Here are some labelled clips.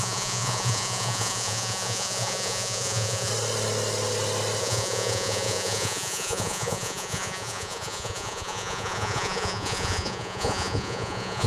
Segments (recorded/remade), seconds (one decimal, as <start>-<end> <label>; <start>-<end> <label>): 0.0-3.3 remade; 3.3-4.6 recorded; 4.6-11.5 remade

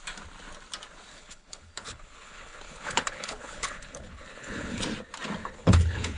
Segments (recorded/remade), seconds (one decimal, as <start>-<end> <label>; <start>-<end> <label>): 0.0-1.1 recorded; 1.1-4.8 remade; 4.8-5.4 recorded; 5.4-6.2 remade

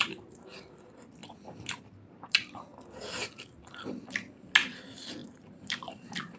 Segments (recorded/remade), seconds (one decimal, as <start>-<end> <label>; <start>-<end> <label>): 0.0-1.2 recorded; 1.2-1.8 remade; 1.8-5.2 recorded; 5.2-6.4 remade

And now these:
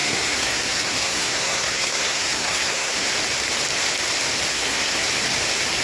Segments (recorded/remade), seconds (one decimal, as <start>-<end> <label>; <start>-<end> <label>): 0.0-3.1 remade; 3.1-4.5 recorded; 4.5-5.1 remade; 5.1-5.8 recorded